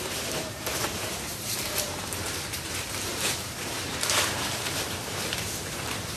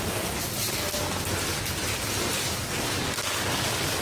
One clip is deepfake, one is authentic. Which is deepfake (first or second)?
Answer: first